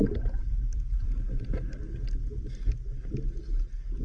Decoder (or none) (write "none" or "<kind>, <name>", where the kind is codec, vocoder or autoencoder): none